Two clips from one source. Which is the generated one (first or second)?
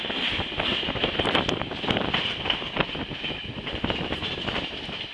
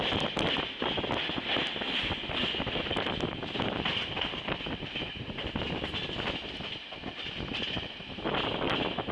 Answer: first